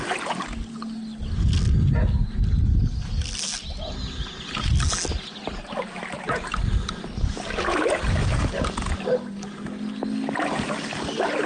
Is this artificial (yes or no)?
no